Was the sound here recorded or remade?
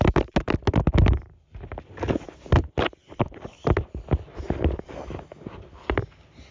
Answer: recorded